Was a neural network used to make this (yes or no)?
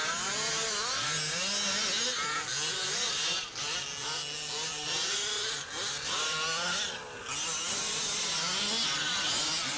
no